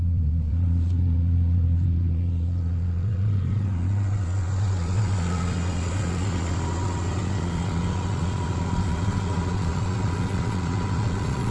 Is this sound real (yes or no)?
no